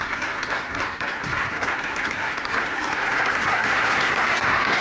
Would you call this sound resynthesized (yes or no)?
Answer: yes